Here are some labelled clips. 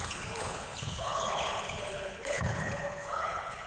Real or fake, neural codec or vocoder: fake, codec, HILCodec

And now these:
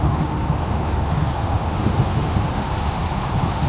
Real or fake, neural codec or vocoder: fake, autoencoder, DAC-VAE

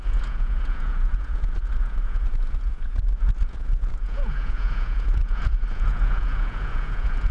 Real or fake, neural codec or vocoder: fake, vocoder, Vocos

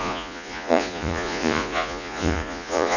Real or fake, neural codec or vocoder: fake, vocoder, Vocos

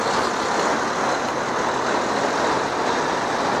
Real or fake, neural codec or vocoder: real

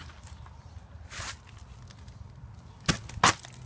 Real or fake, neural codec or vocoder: real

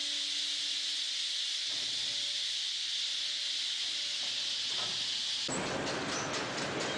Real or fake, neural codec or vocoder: real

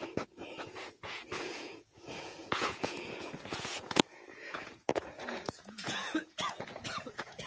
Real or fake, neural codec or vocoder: fake, vocoder, Vocos